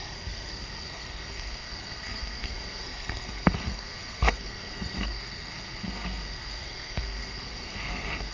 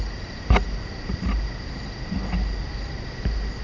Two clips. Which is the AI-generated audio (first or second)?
first